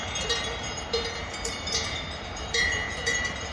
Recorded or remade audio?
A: remade